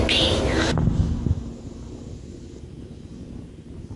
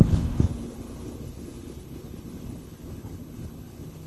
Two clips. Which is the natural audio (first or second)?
first